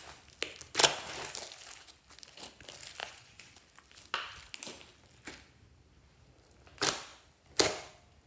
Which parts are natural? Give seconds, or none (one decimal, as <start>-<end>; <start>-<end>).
0.0-3.0; 3.5-8.3